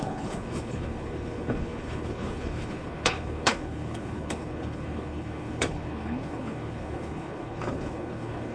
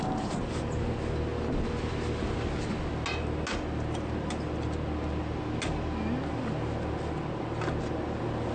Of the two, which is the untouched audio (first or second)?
second